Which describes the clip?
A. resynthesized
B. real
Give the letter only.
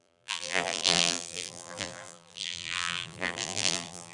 A